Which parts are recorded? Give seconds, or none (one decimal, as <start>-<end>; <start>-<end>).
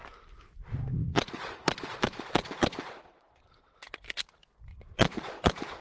0.0-1.1; 3.6-4.7